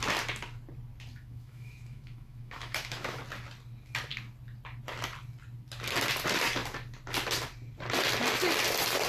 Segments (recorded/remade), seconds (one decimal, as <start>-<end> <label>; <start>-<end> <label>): 0.0-1.1 recorded; 1.1-3.2 remade; 3.2-9.1 recorded